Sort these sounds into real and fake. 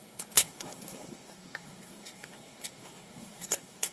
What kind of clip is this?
fake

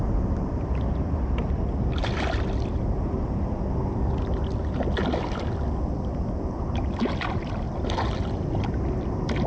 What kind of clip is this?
real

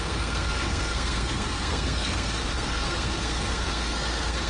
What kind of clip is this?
fake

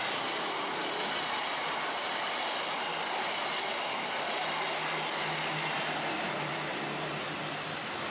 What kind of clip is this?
real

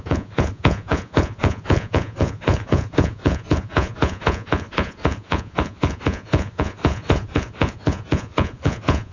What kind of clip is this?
fake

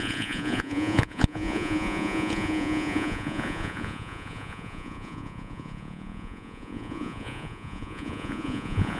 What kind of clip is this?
fake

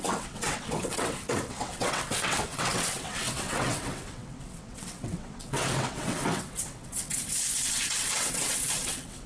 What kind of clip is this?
fake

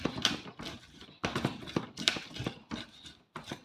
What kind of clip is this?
fake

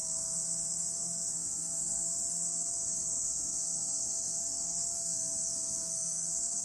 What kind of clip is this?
fake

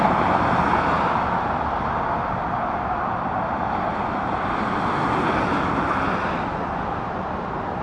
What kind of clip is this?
real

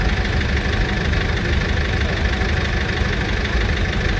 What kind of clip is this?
real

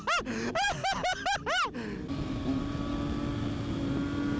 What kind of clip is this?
real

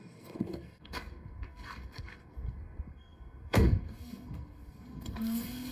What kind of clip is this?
fake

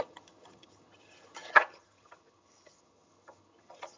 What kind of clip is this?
fake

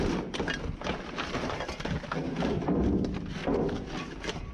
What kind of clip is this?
real